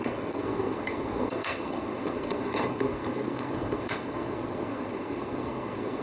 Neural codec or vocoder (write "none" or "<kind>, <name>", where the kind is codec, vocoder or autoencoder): codec, SNAC